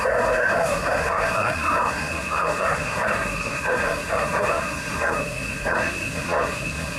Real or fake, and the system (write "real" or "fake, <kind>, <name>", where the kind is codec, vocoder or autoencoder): fake, codec, SNAC